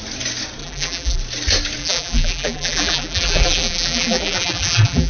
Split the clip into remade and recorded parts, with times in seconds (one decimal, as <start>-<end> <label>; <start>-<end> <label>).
0.0-0.6 recorded; 0.6-1.2 remade; 1.2-1.8 recorded; 1.8-5.1 remade